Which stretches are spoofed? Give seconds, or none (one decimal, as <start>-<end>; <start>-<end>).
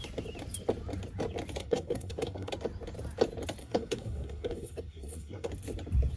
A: 1.6-2.5; 3.6-5.5